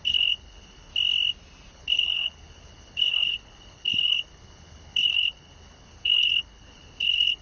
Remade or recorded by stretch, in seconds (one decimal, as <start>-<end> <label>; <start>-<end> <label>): 0.0-0.9 remade; 0.9-1.7 recorded; 1.7-7.4 remade